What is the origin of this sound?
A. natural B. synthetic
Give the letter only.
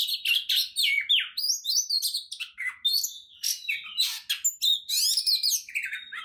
A